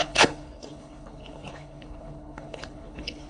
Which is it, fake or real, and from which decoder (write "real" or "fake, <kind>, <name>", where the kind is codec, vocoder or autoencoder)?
fake, codec, HILCodec